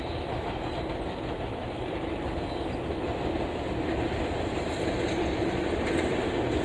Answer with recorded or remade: recorded